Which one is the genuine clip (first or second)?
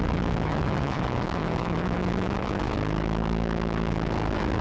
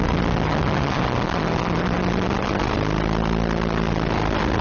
second